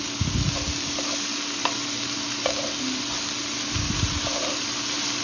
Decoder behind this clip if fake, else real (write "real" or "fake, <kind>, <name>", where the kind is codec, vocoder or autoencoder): real